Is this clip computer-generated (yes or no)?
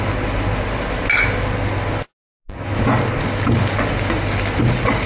no